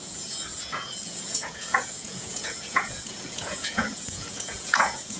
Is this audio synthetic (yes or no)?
yes